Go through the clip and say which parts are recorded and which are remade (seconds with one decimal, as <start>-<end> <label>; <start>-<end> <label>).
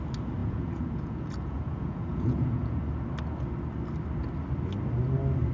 0.0-0.4 recorded; 0.4-2.8 remade; 2.8-5.5 recorded